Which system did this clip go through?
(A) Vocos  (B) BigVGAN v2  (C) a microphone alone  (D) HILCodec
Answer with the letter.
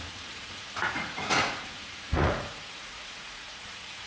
A